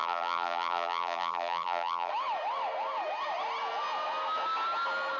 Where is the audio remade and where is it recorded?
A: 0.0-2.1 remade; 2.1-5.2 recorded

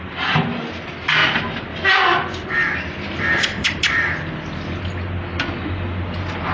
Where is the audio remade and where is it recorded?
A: 0.0-3.5 recorded; 3.5-4.1 remade; 4.1-6.5 recorded

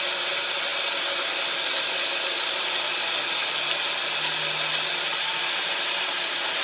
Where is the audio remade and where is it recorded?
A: 0.0-6.6 recorded

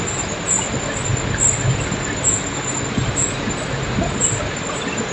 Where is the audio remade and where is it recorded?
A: 0.0-5.1 recorded

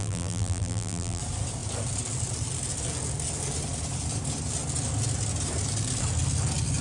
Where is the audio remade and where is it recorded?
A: 0.0-1.2 remade; 1.2-6.8 recorded

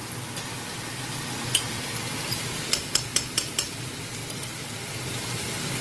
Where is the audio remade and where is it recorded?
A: 0.0-2.3 recorded; 2.3-4.2 remade; 4.2-5.1 recorded; 5.1-5.8 remade

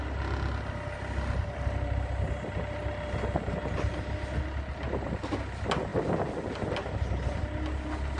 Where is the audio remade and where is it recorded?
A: 0.0-5.9 recorded; 5.9-7.4 remade; 7.4-8.2 recorded